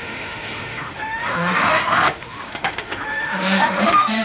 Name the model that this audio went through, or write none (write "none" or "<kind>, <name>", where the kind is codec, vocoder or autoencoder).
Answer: autoencoder, DAC-VAE